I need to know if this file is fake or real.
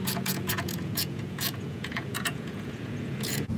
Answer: fake